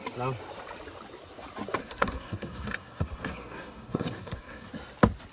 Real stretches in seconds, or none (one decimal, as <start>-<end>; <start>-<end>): 0.0-1.8; 4.7-5.3